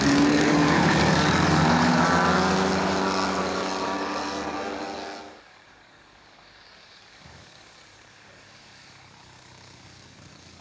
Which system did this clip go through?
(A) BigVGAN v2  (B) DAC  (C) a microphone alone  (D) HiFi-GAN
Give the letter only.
B